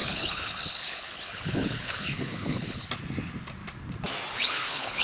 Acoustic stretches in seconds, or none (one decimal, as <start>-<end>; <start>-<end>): 2.8-4.3